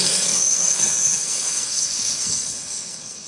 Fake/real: fake